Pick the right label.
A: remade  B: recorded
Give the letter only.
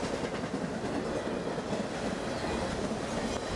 B